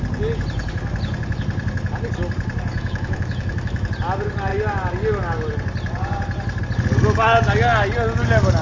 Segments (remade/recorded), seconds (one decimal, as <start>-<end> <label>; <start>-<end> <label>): 0.0-2.7 recorded; 2.7-3.9 remade; 3.9-8.6 recorded